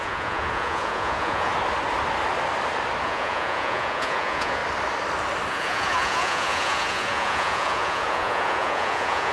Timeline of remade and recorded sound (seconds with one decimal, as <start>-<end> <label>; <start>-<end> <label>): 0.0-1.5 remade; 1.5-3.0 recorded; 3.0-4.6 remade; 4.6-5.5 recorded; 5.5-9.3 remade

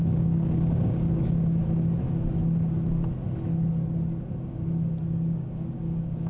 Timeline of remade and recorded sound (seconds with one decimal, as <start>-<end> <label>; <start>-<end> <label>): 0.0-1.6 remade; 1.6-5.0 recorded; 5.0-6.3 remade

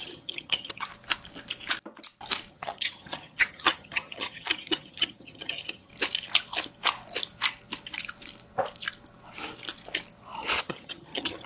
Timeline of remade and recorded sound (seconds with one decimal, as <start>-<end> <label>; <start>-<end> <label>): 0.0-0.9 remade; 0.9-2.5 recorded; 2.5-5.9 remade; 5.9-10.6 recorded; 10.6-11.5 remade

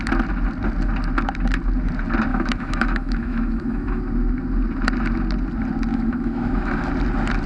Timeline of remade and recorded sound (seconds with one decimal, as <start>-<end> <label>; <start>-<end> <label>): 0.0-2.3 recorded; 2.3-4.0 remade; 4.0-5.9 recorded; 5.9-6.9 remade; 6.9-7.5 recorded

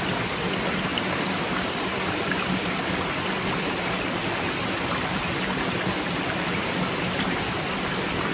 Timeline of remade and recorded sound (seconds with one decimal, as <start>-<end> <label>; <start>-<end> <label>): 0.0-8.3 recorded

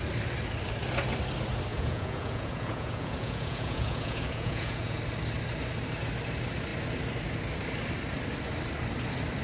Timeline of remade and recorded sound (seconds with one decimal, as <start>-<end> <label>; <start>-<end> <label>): 0.0-1.7 recorded; 1.7-5.0 remade; 5.0-9.4 recorded

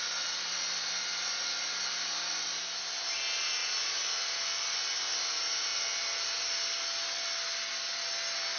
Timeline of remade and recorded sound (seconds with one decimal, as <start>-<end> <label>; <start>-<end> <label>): 0.0-8.6 recorded